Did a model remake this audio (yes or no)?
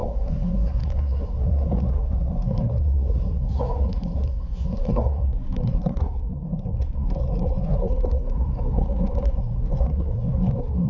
yes